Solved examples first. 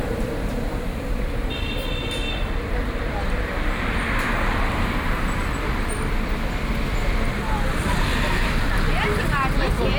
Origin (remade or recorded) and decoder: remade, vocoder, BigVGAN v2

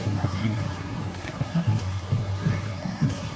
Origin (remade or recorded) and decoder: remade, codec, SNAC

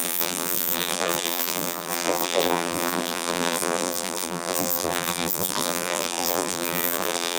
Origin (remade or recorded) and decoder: remade, vocoder, BigVGAN v2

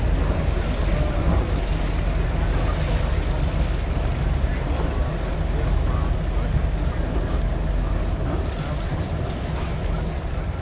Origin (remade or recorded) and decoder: recorded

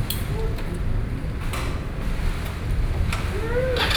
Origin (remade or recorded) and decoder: recorded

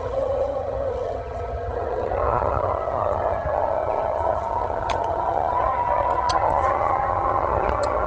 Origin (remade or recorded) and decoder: remade, vocoder, HiFi-GAN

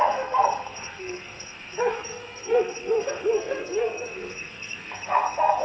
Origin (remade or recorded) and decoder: remade, codec, SNAC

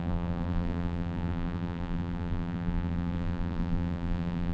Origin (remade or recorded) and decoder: remade, vocoder, BigVGAN v2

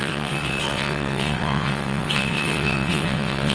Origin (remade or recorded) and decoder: remade, vocoder, WaveNeXt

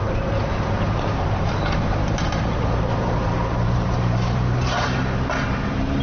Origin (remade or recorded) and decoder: remade, vocoder, BigVGAN v2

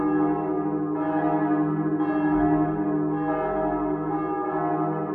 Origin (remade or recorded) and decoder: recorded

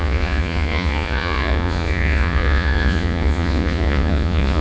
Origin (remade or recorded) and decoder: remade, vocoder, Vocos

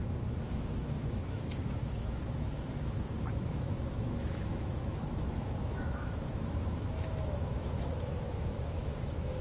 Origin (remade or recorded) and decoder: remade, autoencoder, DAC-VAE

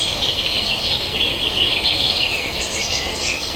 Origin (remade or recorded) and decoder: remade, codec, SNAC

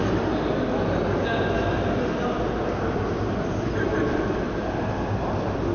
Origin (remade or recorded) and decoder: recorded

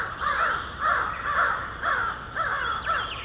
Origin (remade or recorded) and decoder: recorded